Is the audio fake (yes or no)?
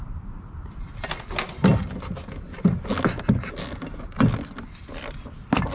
no